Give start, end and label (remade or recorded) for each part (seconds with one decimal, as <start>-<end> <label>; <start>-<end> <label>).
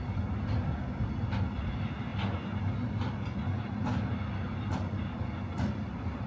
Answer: 0.0-6.3 recorded